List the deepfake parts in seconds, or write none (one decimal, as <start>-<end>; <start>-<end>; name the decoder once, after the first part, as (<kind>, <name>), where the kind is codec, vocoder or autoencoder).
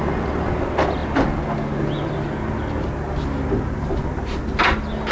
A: none